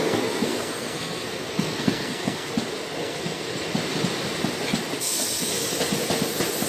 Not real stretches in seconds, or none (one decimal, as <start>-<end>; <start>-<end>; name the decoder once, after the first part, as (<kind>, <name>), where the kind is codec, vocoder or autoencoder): 0.0-2.5 (codec, SNAC); 3.0-3.5; 5.0-5.5